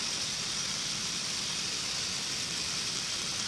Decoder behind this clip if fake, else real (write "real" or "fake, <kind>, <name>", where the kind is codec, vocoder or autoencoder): real